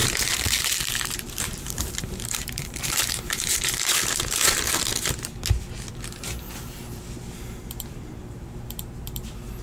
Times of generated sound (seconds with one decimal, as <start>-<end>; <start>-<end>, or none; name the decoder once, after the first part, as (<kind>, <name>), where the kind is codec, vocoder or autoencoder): 0.0-4.4 (vocoder, BigVGAN v2); 6.1-9.6